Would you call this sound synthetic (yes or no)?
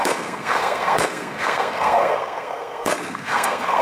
yes